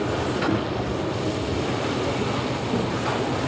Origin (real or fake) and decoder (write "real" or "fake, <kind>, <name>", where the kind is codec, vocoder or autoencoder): real